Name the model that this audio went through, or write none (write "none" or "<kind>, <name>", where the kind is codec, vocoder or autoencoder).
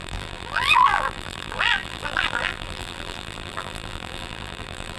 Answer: vocoder, BigVGAN v2